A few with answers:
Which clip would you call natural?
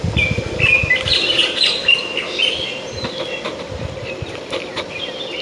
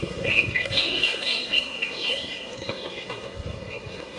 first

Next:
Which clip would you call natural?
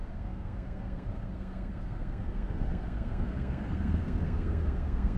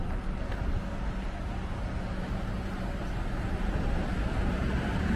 second